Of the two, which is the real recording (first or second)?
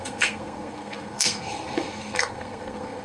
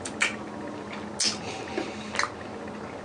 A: second